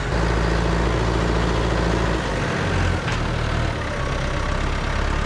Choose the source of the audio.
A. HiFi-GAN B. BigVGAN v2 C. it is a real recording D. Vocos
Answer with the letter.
C